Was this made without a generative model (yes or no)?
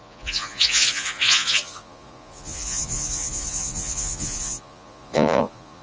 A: no